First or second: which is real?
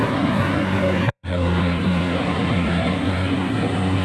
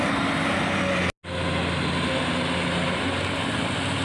second